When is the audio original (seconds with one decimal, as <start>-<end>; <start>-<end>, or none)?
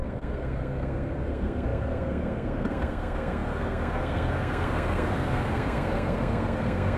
none